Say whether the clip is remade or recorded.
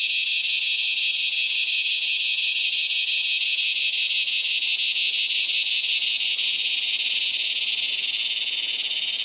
remade